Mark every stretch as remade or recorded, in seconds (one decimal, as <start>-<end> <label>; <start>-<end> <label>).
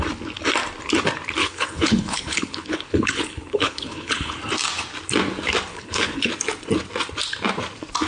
0.0-1.4 recorded; 1.4-4.4 remade; 4.4-5.7 recorded; 5.7-6.3 remade; 6.3-8.1 recorded